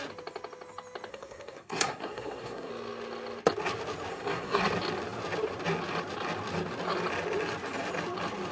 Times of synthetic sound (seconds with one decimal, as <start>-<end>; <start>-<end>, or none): 1.1-2.7; 4.1-4.6